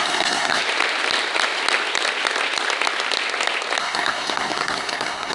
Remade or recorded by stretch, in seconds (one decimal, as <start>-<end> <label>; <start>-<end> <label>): 0.0-0.6 remade; 0.6-3.8 recorded; 3.8-5.3 remade